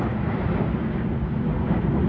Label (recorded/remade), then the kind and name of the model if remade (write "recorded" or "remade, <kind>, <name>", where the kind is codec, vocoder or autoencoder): recorded